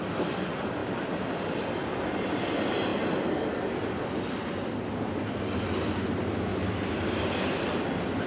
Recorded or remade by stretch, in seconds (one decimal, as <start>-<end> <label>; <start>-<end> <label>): 0.0-8.3 recorded